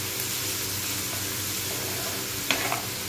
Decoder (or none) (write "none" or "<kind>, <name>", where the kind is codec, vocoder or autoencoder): none